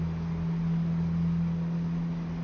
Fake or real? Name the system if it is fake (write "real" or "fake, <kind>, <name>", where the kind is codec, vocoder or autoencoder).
real